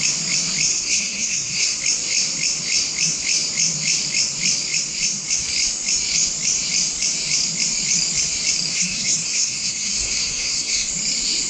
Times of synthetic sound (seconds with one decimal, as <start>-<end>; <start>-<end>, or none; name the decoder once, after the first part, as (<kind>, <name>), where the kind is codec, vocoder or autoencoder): 0.7-1.8 (codec, SNAC); 8.7-10.9